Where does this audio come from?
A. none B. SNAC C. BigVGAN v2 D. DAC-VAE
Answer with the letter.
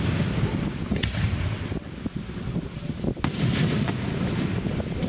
A